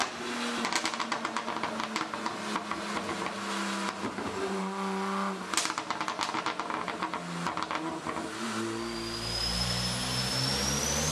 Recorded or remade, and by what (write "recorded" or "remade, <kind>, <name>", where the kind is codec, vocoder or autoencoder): recorded